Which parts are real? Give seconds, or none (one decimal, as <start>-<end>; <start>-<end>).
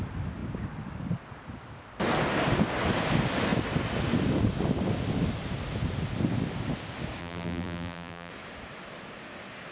0.0-7.2; 8.3-9.7